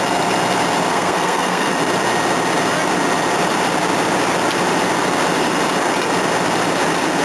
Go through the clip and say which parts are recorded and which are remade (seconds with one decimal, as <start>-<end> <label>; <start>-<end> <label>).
0.0-0.9 recorded; 0.9-1.7 remade; 1.7-7.2 recorded